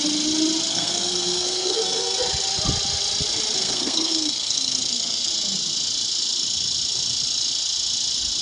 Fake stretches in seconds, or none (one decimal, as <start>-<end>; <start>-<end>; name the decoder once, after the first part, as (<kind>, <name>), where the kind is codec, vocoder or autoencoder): 0.7-2.2 (codec, SNAC); 3.6-5.3

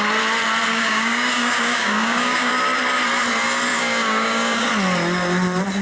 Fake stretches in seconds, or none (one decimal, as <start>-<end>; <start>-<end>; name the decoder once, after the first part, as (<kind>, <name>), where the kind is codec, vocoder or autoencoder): 0.7-2.5 (codec, DAC); 3.7-4.7

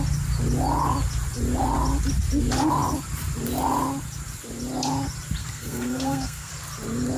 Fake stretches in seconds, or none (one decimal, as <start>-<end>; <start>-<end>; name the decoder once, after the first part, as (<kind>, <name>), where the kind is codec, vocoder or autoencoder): 5.4-6.5 (codec, SNAC)

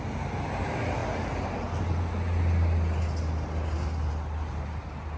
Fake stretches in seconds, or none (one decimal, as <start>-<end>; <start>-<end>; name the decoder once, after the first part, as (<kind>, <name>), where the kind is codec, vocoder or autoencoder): none

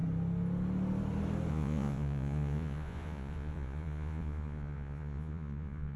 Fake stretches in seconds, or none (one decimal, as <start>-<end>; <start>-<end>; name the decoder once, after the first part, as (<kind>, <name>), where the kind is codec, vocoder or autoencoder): 1.5-6.0 (vocoder, Vocos)

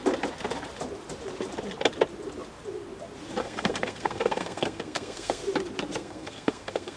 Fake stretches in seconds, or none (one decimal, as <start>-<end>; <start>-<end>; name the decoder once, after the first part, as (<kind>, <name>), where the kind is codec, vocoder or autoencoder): 3.4-5.4 (codec, SNAC); 6.0-7.0

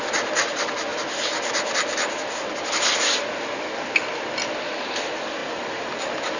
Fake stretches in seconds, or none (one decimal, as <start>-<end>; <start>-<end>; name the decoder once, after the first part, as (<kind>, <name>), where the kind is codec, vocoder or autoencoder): none